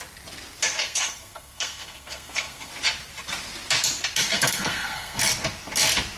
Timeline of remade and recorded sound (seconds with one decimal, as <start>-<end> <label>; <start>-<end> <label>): 0.0-0.8 recorded; 0.8-2.7 remade; 2.7-4.3 recorded; 4.3-5.2 remade; 5.2-6.2 recorded